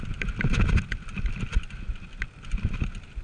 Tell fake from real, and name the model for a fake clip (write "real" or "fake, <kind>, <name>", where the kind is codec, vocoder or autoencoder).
real